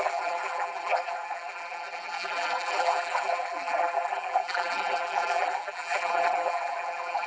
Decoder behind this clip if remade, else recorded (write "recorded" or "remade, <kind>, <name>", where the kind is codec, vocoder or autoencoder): remade, vocoder, BigVGAN v2